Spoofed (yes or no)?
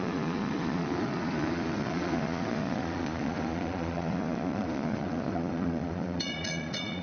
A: yes